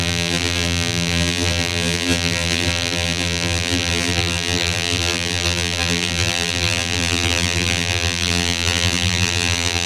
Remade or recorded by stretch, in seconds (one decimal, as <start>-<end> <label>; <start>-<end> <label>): 0.0-9.9 remade